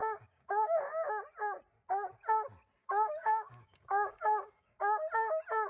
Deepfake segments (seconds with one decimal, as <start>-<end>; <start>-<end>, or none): 0.0-0.8; 2.8-4.8